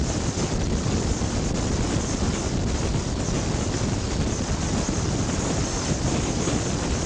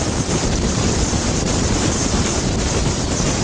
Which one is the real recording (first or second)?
first